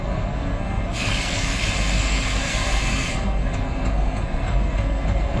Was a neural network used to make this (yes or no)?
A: yes